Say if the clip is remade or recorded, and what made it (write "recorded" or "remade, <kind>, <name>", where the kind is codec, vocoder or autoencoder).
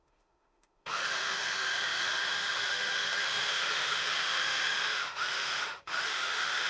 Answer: remade, autoencoder, DAC-VAE